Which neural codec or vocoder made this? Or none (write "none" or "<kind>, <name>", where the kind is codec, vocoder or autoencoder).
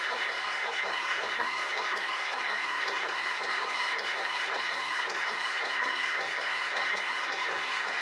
codec, SNAC